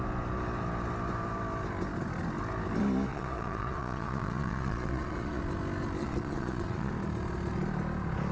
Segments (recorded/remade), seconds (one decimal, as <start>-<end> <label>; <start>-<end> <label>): 0.0-3.1 recorded; 3.1-5.4 remade; 5.4-6.0 recorded; 6.0-6.9 remade; 6.9-8.3 recorded